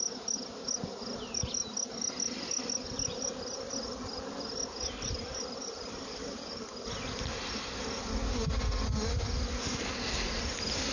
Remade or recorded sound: recorded